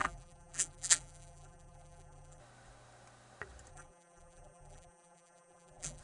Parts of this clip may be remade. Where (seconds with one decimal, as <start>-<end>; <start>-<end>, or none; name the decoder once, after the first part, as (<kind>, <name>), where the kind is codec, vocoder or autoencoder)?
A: 0.0-2.4 (vocoder, BigVGAN v2); 3.7-6.0